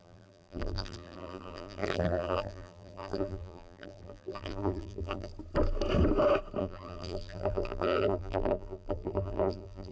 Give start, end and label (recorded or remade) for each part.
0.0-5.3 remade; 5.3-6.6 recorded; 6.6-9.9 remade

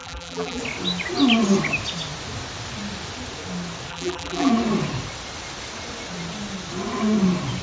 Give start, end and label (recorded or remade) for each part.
0.0-0.6 remade; 0.6-3.9 recorded; 3.9-4.5 remade; 4.5-7.6 recorded